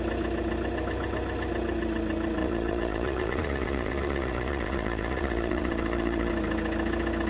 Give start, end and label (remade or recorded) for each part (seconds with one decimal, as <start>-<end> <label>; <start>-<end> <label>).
0.0-2.4 recorded; 2.4-6.3 remade; 6.3-7.3 recorded